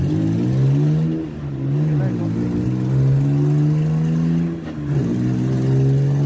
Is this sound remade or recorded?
recorded